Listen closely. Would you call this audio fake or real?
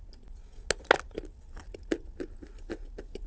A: real